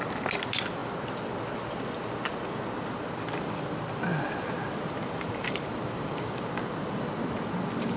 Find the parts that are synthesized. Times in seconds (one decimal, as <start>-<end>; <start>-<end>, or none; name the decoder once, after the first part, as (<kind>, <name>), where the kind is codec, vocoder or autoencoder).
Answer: 4.1-6.5 (vocoder, BigVGAN v2)